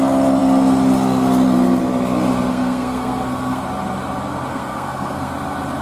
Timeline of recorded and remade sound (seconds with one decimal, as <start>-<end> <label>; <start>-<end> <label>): 0.0-2.5 recorded; 2.5-3.6 remade; 3.6-4.5 recorded; 4.5-5.3 remade; 5.3-5.8 recorded